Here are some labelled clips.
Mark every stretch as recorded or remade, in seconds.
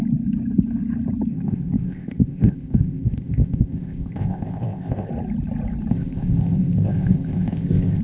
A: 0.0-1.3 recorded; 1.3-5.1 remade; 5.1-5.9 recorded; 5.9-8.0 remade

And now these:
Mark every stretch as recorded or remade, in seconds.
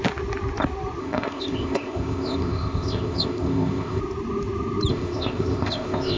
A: 0.0-1.0 recorded; 1.0-4.0 remade; 4.0-4.9 recorded; 4.9-6.2 remade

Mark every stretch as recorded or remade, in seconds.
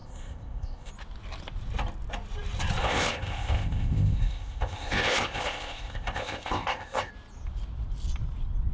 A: 0.0-0.9 remade; 0.9-2.8 recorded; 2.8-7.1 remade; 7.1-8.7 recorded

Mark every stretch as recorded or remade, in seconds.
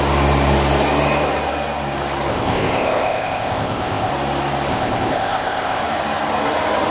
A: 0.0-2.3 recorded; 2.3-4.1 remade; 4.1-4.7 recorded; 4.7-5.8 remade; 5.8-6.9 recorded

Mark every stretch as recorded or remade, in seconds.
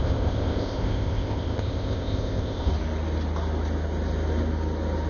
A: 0.0-2.7 remade; 2.7-5.1 recorded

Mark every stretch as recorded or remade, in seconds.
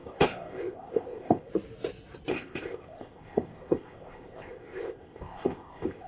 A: 0.0-1.5 remade; 1.5-2.3 recorded; 2.3-6.1 remade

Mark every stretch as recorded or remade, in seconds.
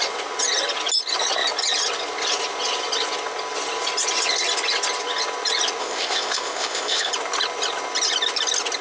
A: 0.0-5.8 recorded; 5.8-7.1 remade; 7.1-8.8 recorded